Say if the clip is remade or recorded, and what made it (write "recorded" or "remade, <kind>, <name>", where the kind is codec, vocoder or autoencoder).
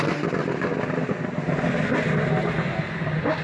recorded